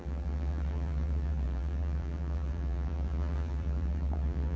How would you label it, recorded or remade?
remade